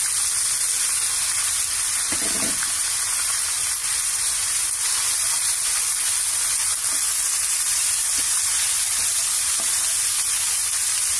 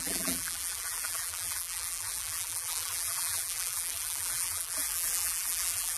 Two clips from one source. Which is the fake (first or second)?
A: second